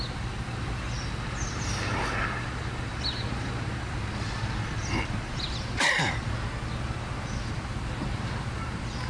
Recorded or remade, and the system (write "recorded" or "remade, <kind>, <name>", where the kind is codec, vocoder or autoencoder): recorded